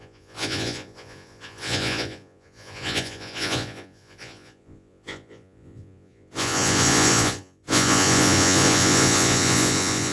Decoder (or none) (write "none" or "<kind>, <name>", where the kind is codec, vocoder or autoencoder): vocoder, Vocos